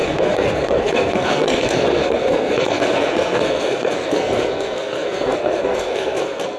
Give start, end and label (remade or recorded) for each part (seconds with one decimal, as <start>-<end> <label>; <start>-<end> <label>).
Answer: 0.0-6.6 remade

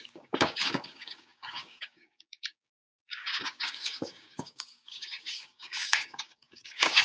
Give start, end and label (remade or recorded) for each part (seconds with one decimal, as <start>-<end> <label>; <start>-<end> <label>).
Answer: 0.0-7.0 remade